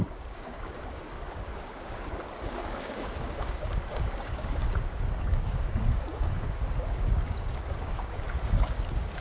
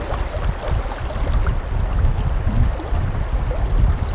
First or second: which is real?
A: second